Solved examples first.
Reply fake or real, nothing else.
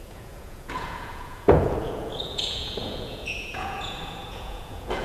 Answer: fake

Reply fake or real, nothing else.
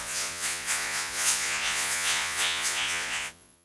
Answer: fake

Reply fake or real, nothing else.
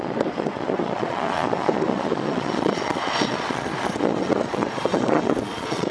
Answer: fake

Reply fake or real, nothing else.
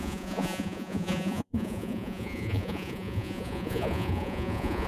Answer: fake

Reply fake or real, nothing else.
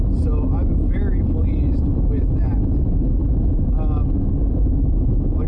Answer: real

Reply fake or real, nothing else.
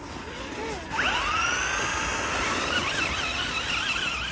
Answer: real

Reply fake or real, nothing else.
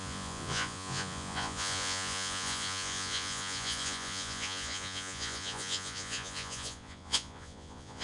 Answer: fake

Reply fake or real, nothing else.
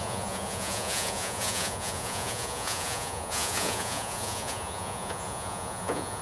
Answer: fake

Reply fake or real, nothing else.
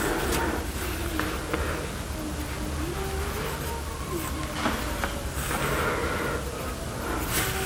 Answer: real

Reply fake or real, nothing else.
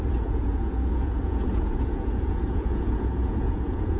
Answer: fake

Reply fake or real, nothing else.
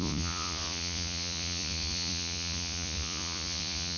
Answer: fake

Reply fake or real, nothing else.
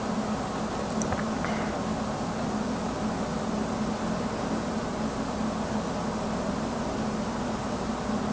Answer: real